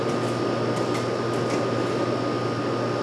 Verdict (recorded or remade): recorded